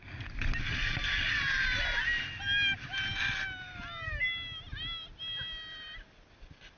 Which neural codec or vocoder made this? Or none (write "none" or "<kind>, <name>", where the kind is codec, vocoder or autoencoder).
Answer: none